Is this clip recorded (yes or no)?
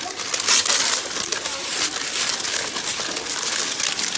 yes